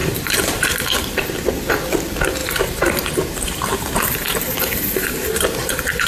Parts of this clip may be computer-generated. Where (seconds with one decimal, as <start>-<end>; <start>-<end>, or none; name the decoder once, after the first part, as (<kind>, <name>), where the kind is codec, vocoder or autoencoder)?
0.0-1.7 (vocoder, BigVGAN v2); 2.4-6.1